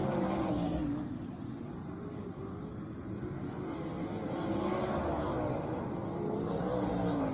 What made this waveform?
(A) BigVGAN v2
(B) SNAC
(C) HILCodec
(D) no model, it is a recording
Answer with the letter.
D